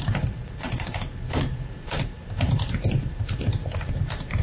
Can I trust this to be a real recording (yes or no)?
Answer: no